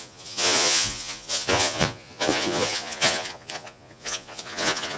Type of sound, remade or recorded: remade